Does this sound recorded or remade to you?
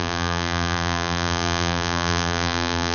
remade